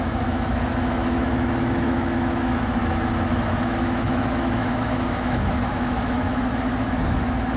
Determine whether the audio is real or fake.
fake